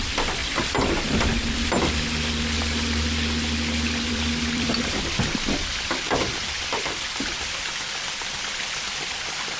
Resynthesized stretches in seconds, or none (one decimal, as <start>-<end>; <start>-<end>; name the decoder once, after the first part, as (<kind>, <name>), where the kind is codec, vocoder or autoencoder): 0.0-0.4 (vocoder, BigVGAN v2); 4.1-9.6